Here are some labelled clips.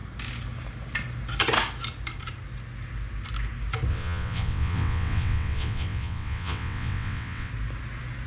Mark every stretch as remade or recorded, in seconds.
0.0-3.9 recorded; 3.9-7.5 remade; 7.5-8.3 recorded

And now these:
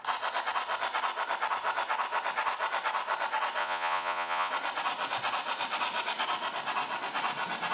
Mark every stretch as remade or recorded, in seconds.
0.0-3.6 recorded; 3.6-4.5 remade; 4.5-7.7 recorded